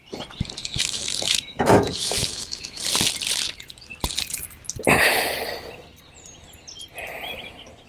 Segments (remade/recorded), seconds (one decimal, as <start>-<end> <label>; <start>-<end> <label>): 0.0-0.6 recorded; 0.6-2.8 remade; 2.8-7.9 recorded